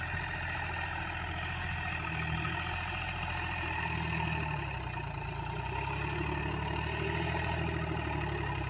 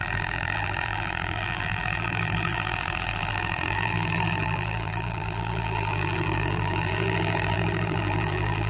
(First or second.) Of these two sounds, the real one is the first